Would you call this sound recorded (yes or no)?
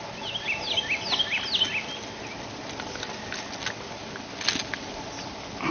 yes